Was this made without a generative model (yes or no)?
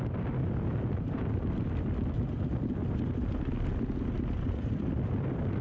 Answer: yes